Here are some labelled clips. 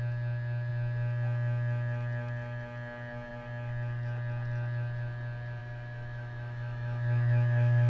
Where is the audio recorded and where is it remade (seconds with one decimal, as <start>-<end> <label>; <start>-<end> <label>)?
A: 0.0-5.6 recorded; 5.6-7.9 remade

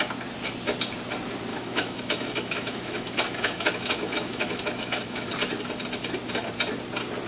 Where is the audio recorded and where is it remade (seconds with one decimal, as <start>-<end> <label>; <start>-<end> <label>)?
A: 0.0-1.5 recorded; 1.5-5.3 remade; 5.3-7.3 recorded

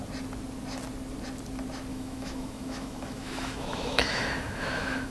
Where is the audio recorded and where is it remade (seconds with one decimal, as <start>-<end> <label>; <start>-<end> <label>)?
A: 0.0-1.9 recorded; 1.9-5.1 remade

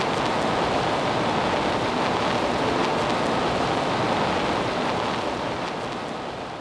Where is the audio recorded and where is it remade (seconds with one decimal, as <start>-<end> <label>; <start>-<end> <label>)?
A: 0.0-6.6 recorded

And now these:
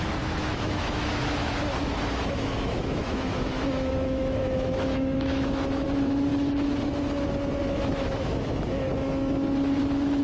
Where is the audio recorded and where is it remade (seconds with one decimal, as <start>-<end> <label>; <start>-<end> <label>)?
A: 0.0-6.3 remade; 6.3-7.6 recorded; 7.6-8.9 remade; 8.9-10.2 recorded

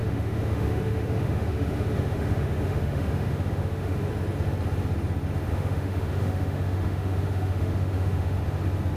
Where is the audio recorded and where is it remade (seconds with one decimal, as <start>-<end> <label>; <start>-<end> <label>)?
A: 0.0-4.1 remade; 4.1-5.5 recorded; 5.5-8.4 remade; 8.4-9.0 recorded